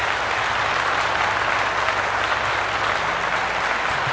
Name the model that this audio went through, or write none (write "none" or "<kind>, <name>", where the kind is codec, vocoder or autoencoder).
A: none